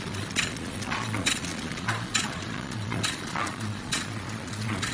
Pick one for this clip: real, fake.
fake